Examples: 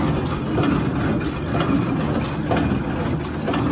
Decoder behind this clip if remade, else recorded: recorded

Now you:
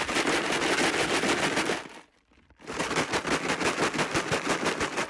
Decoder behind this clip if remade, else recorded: recorded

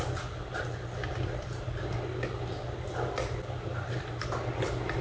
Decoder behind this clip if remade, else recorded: recorded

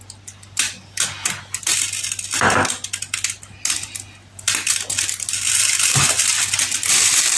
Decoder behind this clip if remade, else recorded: recorded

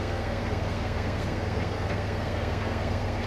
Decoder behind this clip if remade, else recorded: remade, codec, SNAC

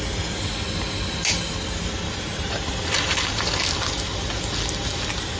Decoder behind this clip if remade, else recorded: recorded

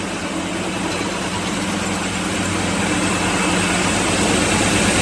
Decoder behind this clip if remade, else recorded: recorded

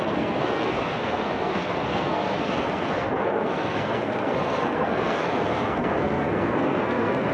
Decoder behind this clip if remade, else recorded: remade, codec, SNAC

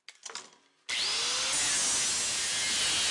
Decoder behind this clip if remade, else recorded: recorded